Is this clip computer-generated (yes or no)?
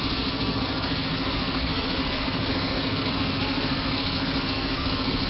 yes